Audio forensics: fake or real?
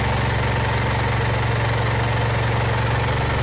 real